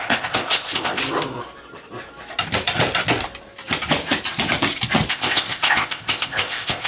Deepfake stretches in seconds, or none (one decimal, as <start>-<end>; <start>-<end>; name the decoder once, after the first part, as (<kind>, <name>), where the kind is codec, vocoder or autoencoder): 0.0-1.0 (codec, ZipCodec); 5.1-6.9